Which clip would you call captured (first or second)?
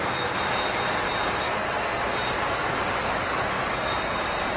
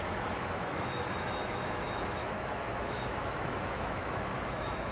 first